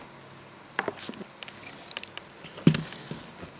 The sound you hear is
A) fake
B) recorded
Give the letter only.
B